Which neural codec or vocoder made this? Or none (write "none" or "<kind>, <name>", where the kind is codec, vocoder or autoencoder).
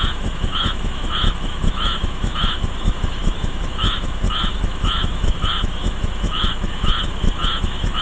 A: autoencoder, DAC-VAE